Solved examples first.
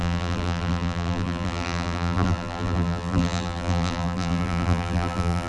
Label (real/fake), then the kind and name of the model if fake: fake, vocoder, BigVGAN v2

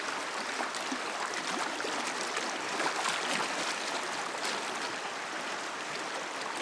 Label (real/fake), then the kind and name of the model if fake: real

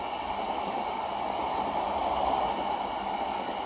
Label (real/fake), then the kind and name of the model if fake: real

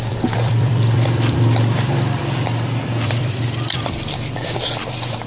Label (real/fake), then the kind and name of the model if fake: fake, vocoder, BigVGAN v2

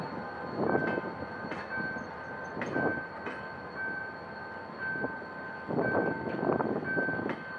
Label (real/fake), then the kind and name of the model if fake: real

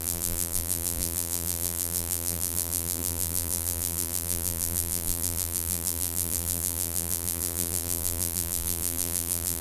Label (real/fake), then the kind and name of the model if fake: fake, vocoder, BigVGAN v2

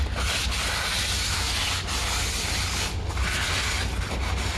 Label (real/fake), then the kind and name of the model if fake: real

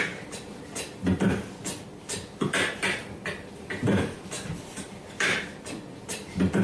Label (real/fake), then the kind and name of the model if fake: real